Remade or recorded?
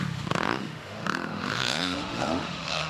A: remade